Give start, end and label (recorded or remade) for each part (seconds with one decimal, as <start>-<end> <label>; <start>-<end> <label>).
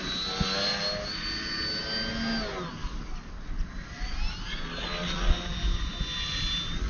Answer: 0.0-6.9 recorded